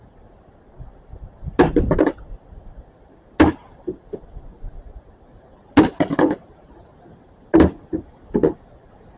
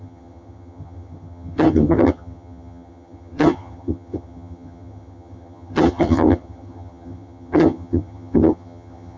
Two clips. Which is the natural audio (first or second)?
first